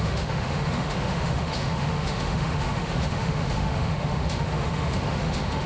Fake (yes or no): yes